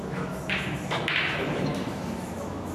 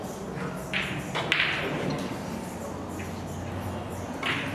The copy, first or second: first